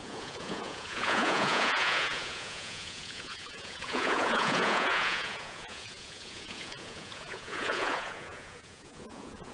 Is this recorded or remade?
remade